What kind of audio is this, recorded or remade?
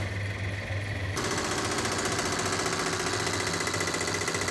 recorded